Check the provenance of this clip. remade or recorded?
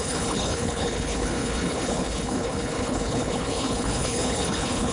remade